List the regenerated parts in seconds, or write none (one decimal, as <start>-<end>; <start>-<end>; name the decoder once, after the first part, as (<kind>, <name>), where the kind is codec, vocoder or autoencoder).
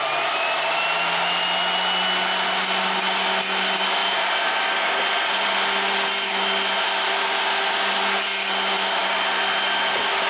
none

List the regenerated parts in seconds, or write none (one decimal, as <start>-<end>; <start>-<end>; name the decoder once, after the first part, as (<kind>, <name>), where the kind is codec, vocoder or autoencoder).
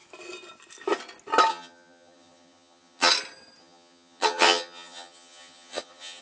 1.5-3.1 (vocoder, HiFi-GAN); 3.6-6.2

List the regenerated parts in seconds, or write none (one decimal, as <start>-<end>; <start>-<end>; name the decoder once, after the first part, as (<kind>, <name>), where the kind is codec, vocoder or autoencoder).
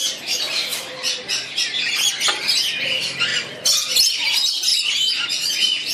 0.7-2.1 (vocoder, BigVGAN v2); 4.7-5.5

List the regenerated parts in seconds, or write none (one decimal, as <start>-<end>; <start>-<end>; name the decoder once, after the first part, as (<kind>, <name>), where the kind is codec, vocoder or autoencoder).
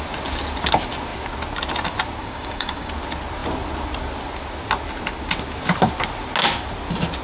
2.2-2.9 (codec, DAC)